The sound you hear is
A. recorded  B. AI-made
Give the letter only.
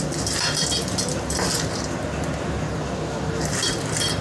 A